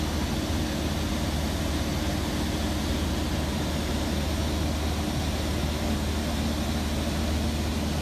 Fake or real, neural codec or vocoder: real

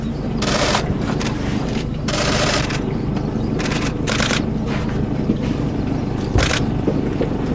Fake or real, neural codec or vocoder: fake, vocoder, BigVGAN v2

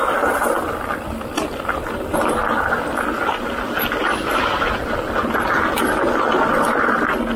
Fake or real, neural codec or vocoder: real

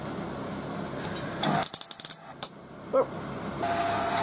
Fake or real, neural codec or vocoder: real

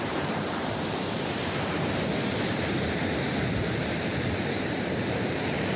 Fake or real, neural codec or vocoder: fake, vocoder, BigVGAN v2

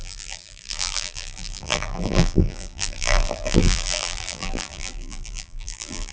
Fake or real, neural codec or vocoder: fake, vocoder, BigVGAN v2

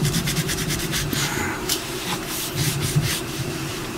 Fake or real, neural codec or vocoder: fake, vocoder, BigVGAN v2